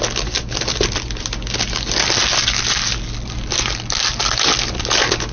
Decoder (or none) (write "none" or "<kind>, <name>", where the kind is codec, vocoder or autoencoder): none